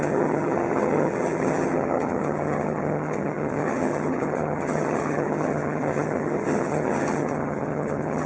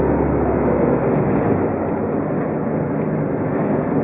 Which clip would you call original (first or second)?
second